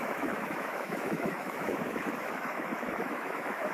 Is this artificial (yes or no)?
yes